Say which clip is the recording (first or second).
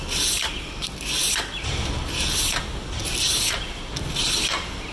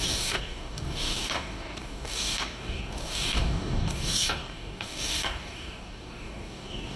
first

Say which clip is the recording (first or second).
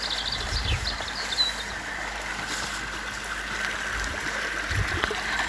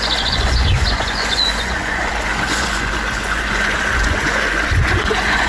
first